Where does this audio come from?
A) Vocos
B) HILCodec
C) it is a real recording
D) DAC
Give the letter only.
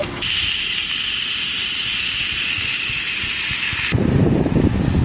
C